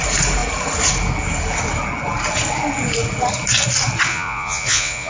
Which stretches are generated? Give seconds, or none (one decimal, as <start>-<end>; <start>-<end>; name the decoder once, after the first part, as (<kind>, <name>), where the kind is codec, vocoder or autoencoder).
4.1-5.1 (vocoder, Vocos)